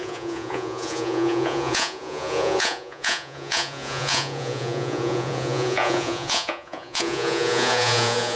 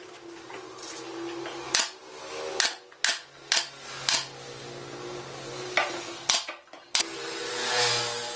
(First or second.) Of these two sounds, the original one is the second